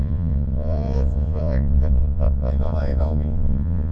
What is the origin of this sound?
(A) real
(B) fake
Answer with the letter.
B